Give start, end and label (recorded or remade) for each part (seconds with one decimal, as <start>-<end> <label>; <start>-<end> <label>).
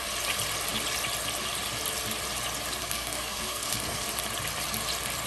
0.0-2.8 recorded; 2.8-4.0 remade; 4.0-5.3 recorded